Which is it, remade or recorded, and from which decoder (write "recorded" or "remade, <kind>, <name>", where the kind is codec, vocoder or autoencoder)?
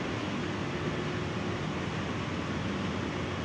recorded